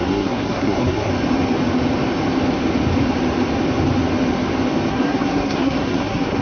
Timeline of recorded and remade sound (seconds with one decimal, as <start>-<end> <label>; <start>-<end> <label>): 0.0-1.1 remade; 1.1-4.9 recorded; 4.9-6.4 remade